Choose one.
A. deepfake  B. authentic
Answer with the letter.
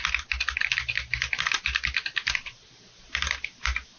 B